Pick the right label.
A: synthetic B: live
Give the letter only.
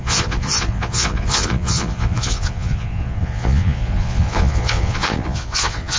A